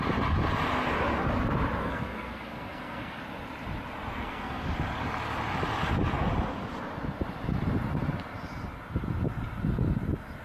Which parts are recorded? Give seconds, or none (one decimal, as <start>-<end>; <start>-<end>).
0.0-1.8; 3.2-4.1; 4.7-10.4